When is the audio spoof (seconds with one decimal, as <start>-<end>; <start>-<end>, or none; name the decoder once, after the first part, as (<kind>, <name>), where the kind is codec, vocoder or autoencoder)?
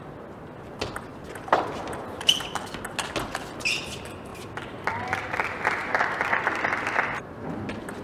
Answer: 1.1-2.7 (vocoder, BigVGAN v2)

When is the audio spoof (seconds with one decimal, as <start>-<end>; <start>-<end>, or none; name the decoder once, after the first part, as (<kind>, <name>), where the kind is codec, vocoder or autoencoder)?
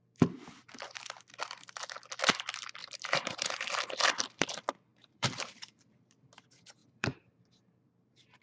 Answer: 2.8-3.7 (vocoder, BigVGAN v2); 4.9-5.8; 6.8-8.4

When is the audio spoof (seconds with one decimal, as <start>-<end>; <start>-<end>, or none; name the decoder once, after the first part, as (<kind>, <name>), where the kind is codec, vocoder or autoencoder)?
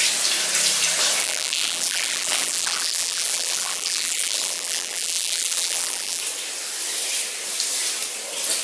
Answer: 1.2-6.2 (vocoder, BigVGAN v2)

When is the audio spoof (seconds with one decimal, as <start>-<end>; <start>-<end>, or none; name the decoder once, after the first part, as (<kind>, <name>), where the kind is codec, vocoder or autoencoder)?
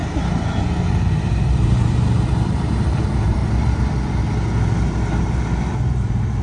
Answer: 0.9-3.4 (vocoder, BigVGAN v2); 5.2-6.4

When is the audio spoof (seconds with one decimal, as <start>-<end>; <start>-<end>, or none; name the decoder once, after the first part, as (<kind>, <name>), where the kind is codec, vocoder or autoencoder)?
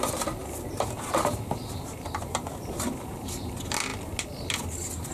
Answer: 0.4-3.5 (vocoder, BigVGAN v2)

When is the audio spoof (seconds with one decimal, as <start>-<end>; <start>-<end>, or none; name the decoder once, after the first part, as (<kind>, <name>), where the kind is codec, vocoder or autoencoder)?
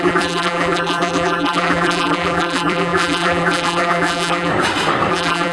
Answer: 0.0-4.5 (vocoder, BigVGAN v2); 5.1-5.5